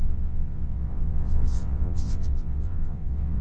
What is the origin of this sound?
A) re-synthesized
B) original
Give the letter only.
A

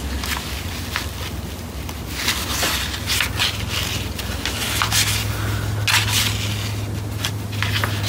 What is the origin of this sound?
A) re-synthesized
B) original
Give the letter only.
B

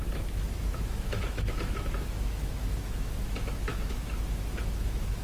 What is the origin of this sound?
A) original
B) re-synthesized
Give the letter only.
B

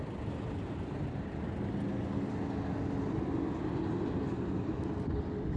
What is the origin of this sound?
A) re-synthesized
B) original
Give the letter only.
B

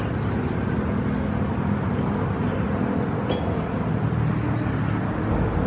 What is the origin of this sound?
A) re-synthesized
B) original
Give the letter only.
B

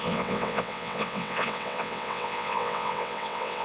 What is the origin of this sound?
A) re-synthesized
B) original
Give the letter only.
A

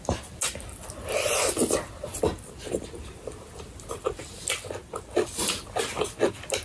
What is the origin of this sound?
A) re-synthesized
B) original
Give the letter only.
B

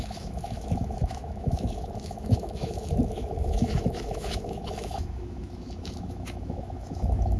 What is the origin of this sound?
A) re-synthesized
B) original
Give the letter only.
A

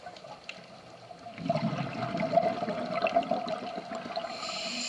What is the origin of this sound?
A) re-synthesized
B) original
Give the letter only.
B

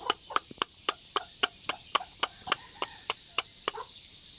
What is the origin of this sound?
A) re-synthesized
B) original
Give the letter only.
A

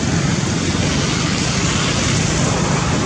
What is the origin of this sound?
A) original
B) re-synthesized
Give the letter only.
A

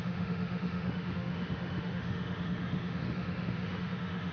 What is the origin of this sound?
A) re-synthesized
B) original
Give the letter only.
A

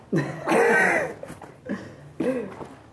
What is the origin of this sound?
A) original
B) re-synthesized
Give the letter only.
A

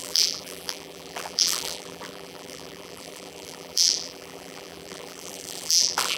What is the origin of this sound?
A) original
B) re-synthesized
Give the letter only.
B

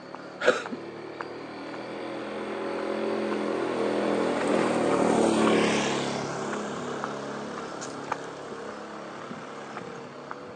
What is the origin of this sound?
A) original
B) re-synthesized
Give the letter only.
A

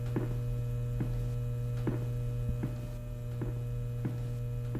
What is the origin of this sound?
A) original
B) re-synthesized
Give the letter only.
A